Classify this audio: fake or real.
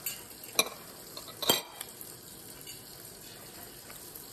real